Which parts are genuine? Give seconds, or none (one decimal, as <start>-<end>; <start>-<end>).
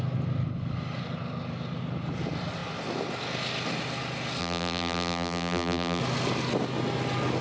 0.0-4.4; 6.0-7.4